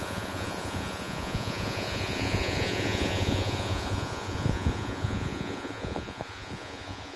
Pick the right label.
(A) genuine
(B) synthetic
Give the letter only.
B